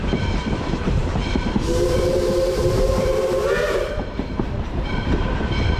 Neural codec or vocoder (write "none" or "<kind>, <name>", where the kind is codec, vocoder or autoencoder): vocoder, BigVGAN v2